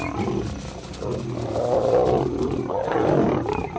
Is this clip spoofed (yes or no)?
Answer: no